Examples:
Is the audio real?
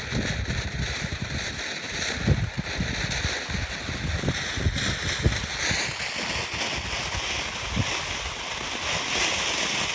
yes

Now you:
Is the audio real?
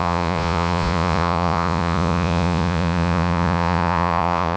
no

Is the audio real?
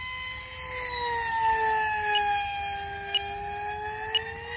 yes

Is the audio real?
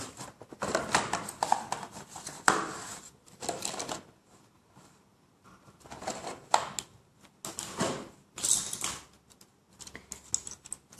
yes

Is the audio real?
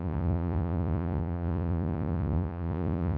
no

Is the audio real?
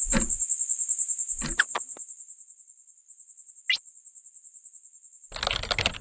yes